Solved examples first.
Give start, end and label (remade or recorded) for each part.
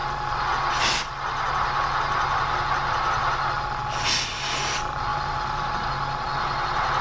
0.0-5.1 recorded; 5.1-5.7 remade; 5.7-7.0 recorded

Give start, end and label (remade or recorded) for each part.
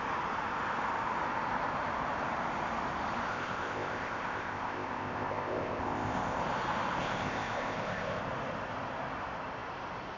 0.0-3.3 recorded; 3.3-6.4 remade; 6.4-7.0 recorded; 7.0-8.2 remade; 8.2-10.2 recorded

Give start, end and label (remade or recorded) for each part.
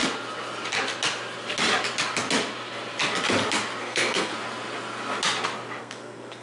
0.0-3.8 recorded; 3.8-4.3 remade; 4.3-5.8 recorded; 5.8-6.4 remade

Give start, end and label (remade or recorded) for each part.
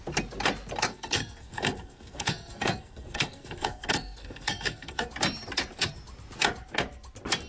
0.0-0.9 recorded; 0.9-5.1 remade; 5.1-7.5 recorded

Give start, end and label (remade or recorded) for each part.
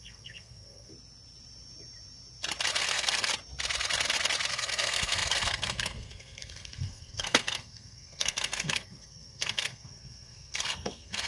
0.0-0.9 remade; 0.9-2.8 recorded; 2.8-3.3 remade; 3.3-4.5 recorded; 4.5-11.3 remade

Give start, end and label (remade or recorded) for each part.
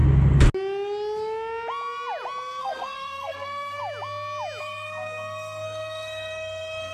0.0-2.6 recorded; 2.6-3.8 remade; 3.8-4.6 recorded; 4.6-6.9 remade